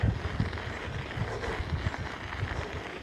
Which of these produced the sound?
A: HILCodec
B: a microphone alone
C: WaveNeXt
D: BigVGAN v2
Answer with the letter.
B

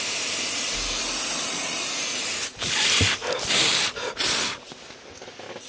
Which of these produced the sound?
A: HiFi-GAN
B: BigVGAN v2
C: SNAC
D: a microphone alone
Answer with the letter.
D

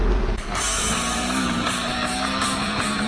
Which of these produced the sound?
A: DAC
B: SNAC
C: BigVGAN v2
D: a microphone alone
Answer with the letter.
C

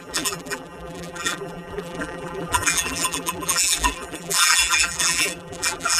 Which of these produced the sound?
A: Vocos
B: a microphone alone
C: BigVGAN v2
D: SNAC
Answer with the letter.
C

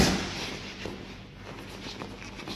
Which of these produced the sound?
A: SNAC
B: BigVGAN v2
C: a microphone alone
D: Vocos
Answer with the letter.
C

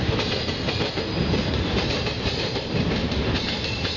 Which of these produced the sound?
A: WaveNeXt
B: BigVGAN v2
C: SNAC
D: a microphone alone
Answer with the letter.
B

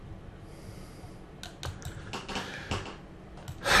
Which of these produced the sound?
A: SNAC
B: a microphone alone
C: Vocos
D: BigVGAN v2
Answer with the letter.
B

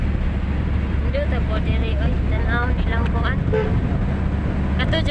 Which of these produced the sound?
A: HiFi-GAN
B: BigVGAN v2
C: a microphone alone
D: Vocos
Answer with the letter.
C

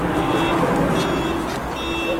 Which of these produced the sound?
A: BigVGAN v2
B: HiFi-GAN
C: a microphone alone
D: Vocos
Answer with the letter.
C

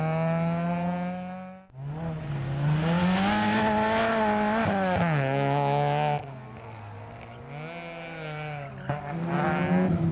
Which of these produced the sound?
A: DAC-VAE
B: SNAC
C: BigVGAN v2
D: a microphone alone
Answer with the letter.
D